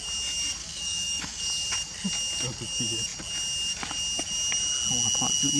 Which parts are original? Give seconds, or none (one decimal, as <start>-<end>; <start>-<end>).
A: 0.0-0.6; 1.4-5.6